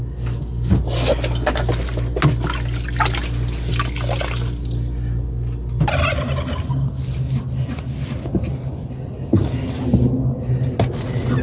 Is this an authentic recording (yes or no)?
yes